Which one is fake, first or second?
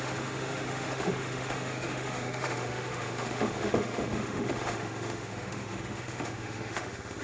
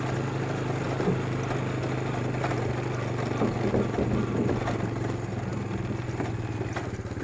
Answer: first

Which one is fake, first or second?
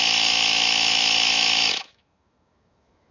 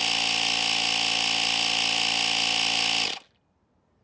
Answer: first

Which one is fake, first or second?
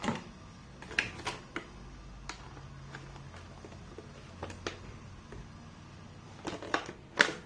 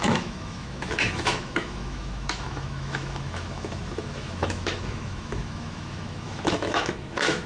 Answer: second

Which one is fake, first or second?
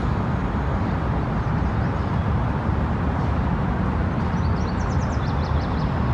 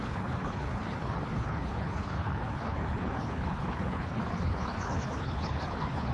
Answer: second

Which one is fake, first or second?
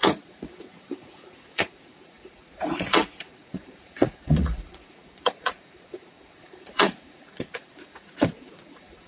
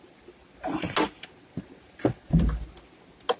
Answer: first